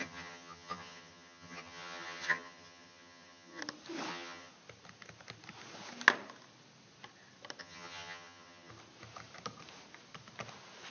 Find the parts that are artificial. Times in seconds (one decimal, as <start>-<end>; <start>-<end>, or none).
0.0-3.6; 4.1-4.5; 7.6-8.7